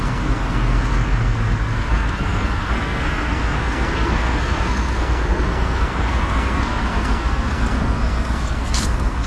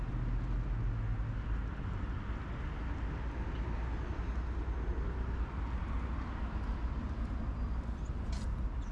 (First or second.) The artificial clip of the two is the first